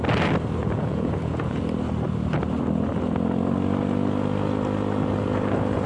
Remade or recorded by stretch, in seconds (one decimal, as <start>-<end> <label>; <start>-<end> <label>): 0.0-0.6 recorded; 0.6-1.6 remade; 1.6-5.9 recorded